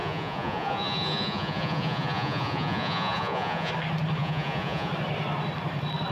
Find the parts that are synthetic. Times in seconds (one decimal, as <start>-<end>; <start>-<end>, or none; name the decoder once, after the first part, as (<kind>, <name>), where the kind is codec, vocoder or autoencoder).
0.0-3.7 (vocoder, Vocos); 4.2-4.9